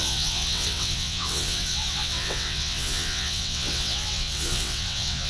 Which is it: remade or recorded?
remade